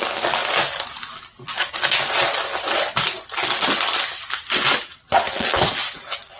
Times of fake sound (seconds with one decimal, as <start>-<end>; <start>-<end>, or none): 0.0-0.4; 1.0-1.5; 5.3-6.4